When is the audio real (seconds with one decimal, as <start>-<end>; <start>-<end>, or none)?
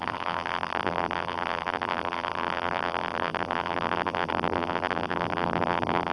none